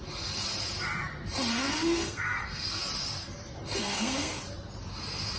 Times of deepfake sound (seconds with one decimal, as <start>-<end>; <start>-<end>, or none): 1.6-2.8; 3.8-4.4